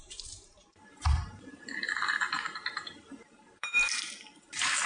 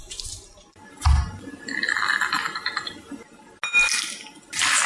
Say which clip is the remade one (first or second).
first